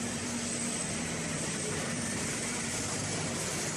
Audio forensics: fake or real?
fake